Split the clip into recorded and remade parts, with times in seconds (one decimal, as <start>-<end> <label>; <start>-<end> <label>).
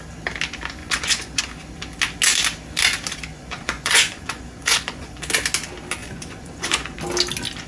0.0-0.8 recorded; 0.8-1.4 remade; 1.4-3.3 recorded; 3.3-5.3 remade; 5.3-6.0 recorded; 6.0-7.0 remade; 7.0-7.7 recorded